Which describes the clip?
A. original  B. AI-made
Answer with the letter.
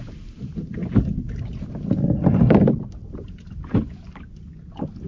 A